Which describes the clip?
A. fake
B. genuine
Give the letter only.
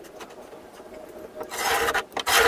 B